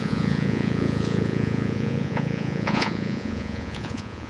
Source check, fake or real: fake